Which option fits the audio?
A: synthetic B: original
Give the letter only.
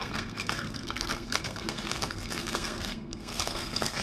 A